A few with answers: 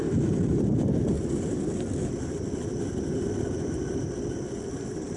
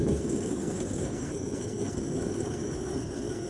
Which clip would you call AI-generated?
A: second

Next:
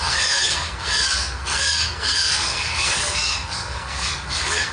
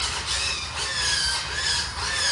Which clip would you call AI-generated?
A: first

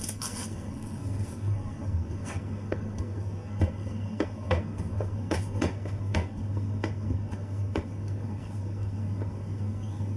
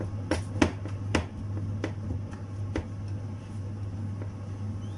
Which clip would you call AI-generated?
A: first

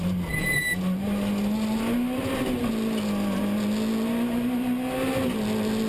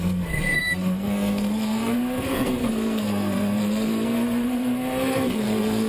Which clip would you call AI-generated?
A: second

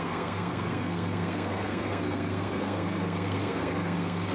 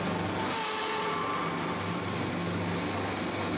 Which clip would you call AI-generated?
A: first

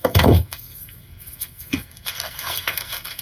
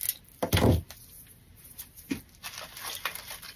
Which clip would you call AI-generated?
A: first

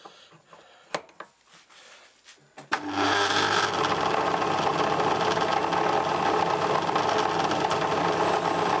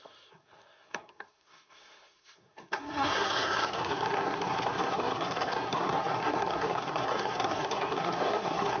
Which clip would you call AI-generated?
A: second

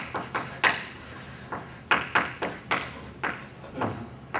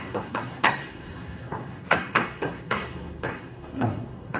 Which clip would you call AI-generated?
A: second